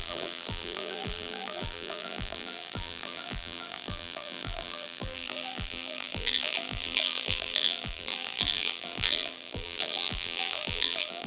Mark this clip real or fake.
fake